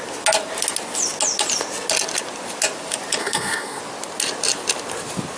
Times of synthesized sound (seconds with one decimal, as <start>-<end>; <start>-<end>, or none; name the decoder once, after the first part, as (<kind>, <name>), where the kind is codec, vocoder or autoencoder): 3.2-3.8 (codec, SNAC)